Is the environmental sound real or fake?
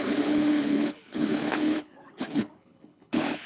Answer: fake